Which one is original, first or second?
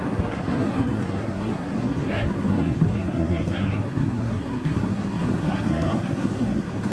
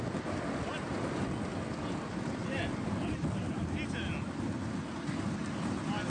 second